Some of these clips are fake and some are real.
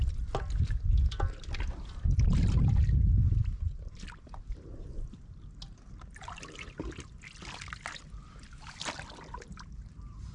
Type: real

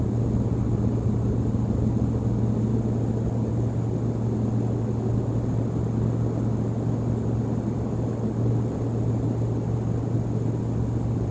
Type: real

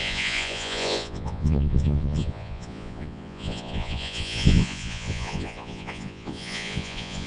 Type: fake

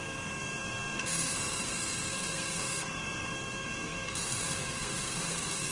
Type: fake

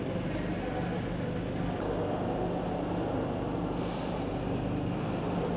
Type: real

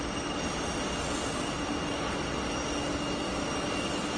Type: real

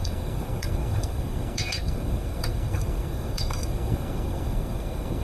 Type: fake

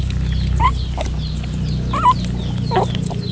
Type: real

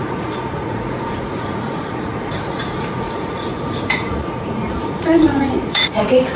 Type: fake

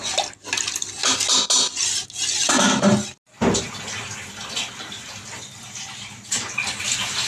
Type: real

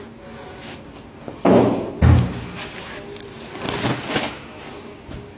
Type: real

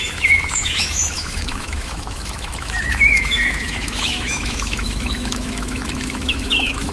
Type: fake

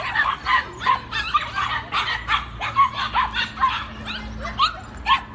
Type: real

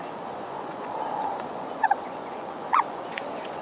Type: fake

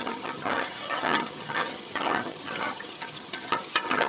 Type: fake